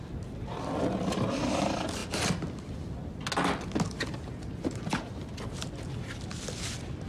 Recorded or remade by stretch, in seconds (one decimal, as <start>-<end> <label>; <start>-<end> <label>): 0.0-7.1 recorded